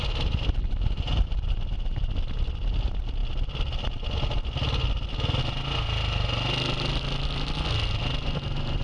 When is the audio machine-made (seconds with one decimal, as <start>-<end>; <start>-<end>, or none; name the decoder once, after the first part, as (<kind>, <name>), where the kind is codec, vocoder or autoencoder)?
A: none